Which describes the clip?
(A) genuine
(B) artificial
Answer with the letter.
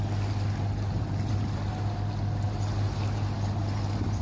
A